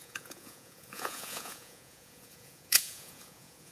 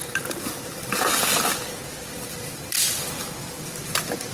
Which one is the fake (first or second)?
first